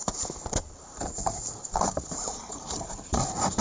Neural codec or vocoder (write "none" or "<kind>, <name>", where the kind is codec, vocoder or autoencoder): vocoder, BigVGAN v2